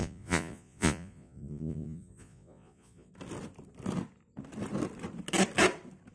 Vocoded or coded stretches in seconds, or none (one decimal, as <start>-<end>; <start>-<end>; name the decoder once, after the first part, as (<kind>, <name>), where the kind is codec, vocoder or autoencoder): 0.0-3.1 (vocoder, Vocos)